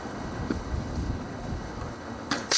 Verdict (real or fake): fake